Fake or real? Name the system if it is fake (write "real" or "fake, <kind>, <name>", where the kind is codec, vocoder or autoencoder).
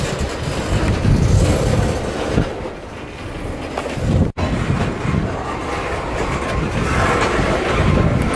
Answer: real